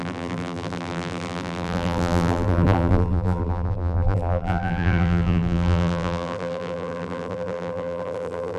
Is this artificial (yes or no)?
yes